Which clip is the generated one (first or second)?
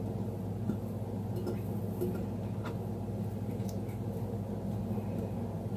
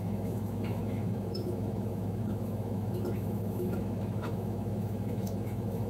second